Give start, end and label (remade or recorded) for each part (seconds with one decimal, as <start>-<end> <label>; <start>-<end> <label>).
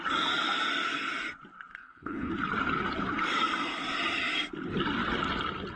0.0-1.7 recorded; 1.7-2.3 remade; 2.3-5.8 recorded